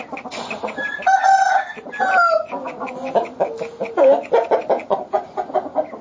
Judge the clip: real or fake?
real